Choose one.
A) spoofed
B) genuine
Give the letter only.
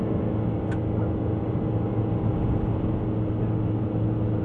B